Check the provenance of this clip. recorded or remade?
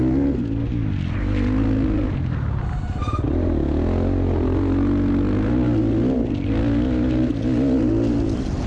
recorded